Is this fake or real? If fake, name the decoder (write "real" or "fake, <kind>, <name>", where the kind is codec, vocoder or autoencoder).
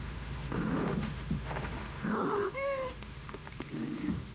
fake, autoencoder, DAC-VAE